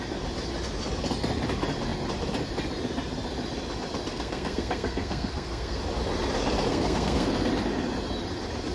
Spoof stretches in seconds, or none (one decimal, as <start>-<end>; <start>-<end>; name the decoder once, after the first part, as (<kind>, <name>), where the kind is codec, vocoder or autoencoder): 4.1-5.8 (codec, SNAC); 6.7-7.5